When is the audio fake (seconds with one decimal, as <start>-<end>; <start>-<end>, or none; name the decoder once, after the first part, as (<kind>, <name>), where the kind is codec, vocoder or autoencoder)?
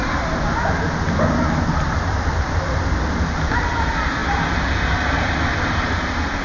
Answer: none